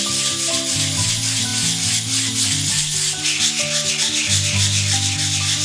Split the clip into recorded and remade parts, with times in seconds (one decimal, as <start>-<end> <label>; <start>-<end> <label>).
0.0-5.6 recorded